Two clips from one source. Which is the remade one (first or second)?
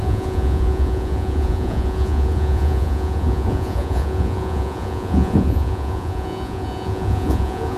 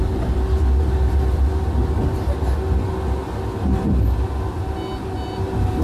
first